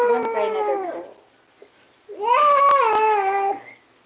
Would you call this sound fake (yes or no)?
no